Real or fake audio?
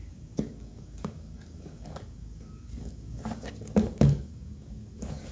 fake